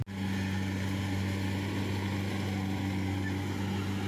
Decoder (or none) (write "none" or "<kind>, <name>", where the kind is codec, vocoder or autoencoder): none